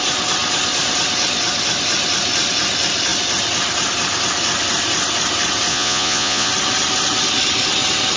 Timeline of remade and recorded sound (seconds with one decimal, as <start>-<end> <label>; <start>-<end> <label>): 0.0-5.7 recorded; 5.7-6.5 remade; 6.5-8.2 recorded